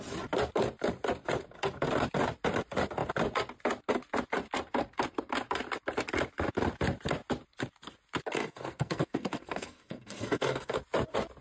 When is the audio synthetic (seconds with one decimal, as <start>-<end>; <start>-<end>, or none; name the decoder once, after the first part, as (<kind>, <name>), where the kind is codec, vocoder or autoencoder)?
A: 8.4-10.8 (codec, SNAC)